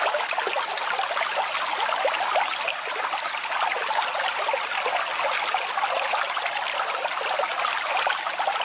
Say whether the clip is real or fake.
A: real